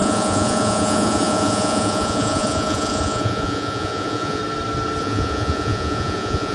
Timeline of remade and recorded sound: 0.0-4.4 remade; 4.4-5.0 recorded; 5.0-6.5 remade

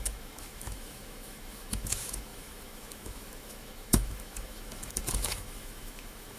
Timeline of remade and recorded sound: 0.0-6.4 remade

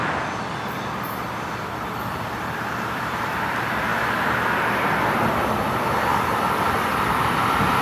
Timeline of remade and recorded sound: 0.0-3.9 remade; 3.9-6.5 recorded; 6.5-7.8 remade

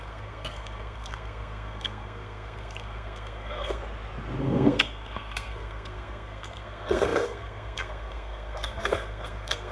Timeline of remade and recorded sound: 0.0-3.8 remade; 3.8-4.4 recorded; 4.4-9.7 remade

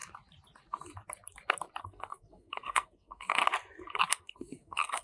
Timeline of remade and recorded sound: 0.0-1.8 recorded; 1.8-3.4 remade; 3.4-4.1 recorded; 4.1-5.0 remade